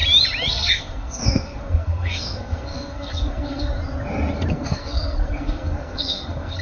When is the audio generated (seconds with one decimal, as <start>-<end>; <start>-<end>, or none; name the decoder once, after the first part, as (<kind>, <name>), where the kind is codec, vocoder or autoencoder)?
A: 0.5-3.7 (codec, SNAC); 4.5-6.6